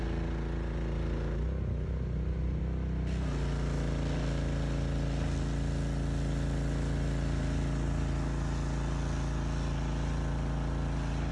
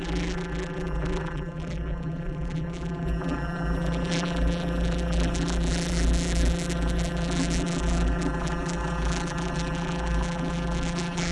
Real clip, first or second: first